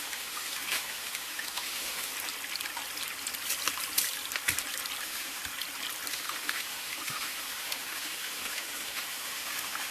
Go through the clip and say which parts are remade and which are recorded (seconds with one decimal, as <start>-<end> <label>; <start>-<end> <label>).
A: 0.0-2.1 remade; 2.1-5.0 recorded; 5.0-5.4 remade; 5.4-6.1 recorded; 6.1-9.9 remade